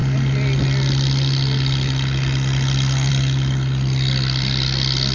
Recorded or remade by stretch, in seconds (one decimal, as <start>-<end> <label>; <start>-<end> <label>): 0.0-5.1 recorded